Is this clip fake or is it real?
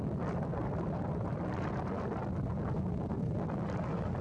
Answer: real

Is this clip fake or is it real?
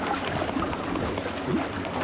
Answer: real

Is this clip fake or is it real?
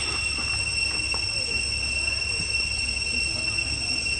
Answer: real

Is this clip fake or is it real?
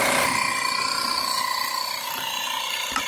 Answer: real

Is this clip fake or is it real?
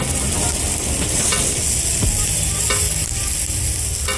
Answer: real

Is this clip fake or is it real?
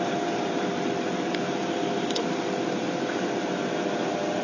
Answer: fake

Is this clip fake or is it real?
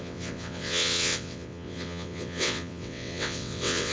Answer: fake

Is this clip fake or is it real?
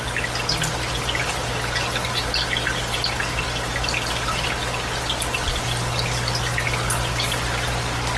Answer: real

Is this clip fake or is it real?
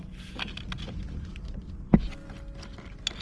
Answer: real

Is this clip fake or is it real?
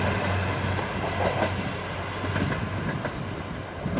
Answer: real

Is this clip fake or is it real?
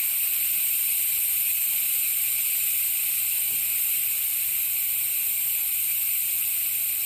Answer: real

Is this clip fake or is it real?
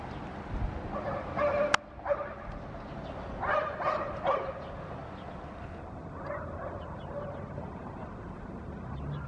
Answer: real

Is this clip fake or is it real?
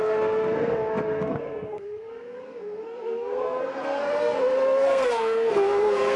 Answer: fake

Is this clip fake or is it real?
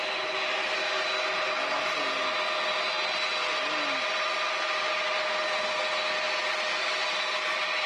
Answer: real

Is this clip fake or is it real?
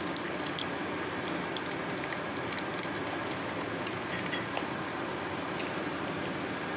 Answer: real